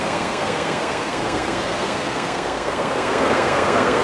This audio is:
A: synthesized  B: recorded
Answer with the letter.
A